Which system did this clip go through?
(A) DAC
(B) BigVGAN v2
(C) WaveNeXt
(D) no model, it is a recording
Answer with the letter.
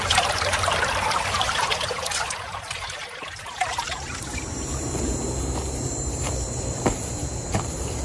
B